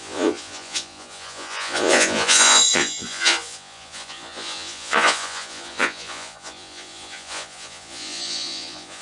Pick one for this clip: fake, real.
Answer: fake